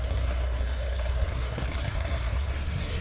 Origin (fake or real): fake